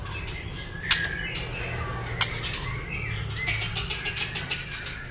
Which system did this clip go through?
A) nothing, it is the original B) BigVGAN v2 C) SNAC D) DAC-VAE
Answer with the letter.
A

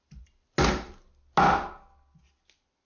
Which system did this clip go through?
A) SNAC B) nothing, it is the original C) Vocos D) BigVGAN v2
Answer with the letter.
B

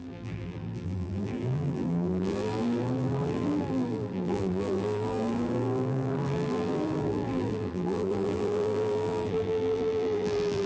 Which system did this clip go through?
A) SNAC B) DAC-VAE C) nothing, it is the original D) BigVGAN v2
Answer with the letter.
D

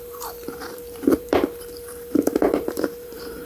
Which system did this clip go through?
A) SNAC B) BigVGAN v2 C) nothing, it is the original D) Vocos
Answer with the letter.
B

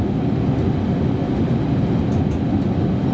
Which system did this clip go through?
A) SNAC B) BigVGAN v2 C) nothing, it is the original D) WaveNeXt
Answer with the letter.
C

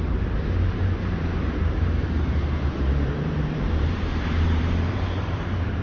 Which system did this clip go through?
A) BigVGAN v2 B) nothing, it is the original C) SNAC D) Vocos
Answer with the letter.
A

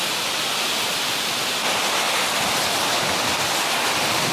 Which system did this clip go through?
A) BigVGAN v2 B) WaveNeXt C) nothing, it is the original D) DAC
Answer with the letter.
C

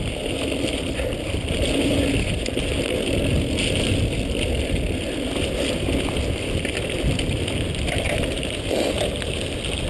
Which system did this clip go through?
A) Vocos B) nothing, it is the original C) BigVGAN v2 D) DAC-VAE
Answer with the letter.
B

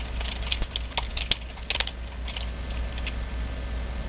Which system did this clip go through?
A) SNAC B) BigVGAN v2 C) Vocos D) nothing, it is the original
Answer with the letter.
D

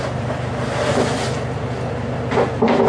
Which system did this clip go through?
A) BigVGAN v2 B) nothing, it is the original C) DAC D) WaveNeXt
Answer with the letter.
B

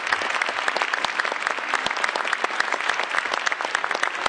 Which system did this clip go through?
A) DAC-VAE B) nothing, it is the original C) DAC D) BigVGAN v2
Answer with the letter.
B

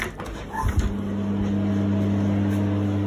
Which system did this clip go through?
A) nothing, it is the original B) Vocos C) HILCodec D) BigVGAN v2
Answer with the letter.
A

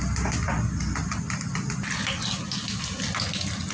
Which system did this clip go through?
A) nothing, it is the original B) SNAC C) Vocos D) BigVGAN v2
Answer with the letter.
A